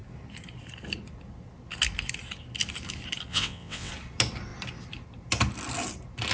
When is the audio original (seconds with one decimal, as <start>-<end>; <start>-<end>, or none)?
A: 0.0-3.3; 3.9-6.3